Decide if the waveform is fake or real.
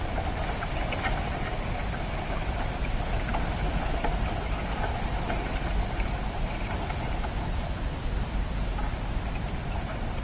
real